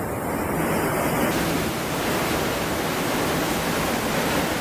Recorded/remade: recorded